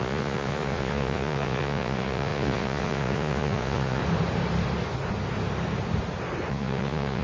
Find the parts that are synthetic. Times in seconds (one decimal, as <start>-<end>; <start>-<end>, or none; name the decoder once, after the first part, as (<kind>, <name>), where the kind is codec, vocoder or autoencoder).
0.0-4.0 (vocoder, Vocos); 6.5-7.2